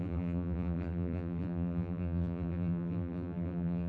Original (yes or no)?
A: no